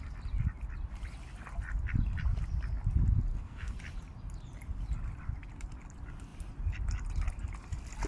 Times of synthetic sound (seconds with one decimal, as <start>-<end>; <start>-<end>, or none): 3.3-3.8